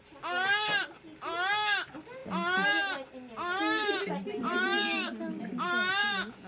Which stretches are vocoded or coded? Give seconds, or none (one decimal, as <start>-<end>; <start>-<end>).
6.0-6.5